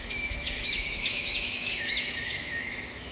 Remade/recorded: remade